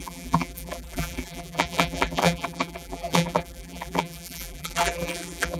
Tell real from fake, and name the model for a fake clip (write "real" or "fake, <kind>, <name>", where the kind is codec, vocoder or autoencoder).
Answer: fake, vocoder, BigVGAN v2